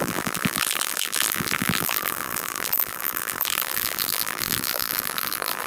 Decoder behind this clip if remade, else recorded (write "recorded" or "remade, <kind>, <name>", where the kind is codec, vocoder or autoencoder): remade, vocoder, BigVGAN v2